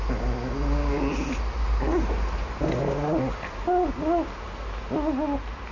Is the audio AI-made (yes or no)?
no